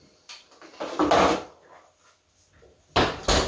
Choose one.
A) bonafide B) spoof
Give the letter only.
A